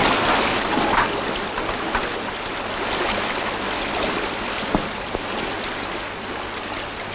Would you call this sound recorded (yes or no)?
yes